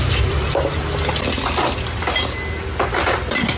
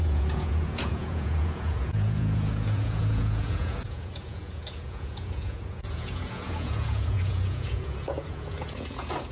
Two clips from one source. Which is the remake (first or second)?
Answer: second